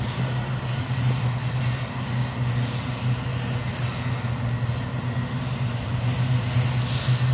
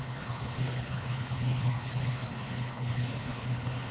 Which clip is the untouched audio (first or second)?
first